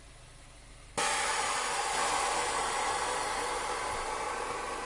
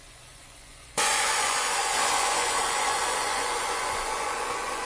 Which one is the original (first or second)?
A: first